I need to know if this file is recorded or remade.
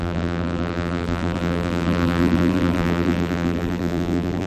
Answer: remade